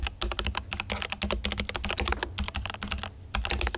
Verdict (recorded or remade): recorded